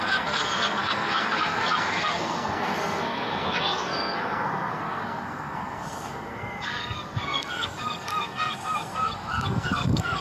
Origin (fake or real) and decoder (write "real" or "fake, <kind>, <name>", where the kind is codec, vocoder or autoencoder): fake, codec, SNAC